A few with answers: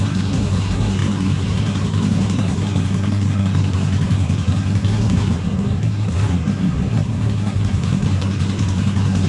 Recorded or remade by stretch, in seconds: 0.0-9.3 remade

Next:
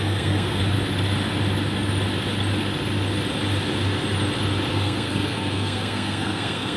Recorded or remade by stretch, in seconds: 0.0-0.6 remade; 0.6-4.7 recorded; 4.7-6.8 remade

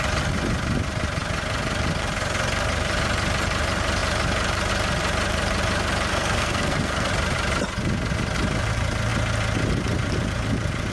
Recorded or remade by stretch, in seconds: 0.0-6.1 recorded; 6.1-7.1 remade; 7.1-10.9 recorded

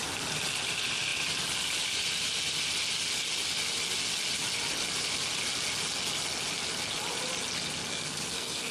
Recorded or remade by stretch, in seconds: 0.0-7.9 recorded; 7.9-8.7 remade

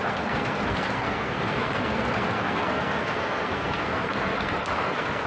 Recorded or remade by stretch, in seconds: 0.0-5.3 remade